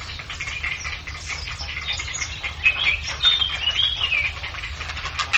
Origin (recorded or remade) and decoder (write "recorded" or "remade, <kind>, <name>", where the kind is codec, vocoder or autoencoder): recorded